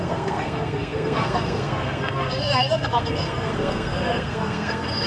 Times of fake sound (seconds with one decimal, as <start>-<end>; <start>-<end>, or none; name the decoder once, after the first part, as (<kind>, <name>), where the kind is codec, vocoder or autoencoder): 0.0-5.1 (codec, SNAC)